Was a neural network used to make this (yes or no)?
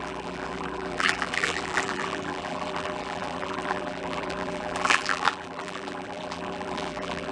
yes